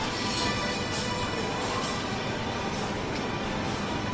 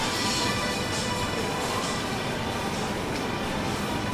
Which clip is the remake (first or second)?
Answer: second